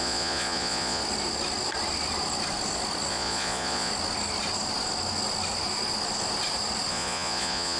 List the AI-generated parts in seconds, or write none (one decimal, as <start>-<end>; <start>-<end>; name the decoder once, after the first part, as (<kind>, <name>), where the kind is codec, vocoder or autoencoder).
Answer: 0.0-1.0 (vocoder, Vocos); 3.1-3.9; 6.9-7.8